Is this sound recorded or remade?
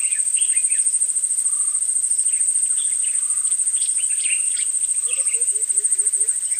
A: recorded